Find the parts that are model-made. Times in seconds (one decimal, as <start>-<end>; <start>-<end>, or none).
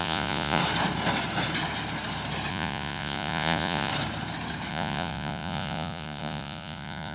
0.0-0.6; 2.5-3.9; 4.7-7.1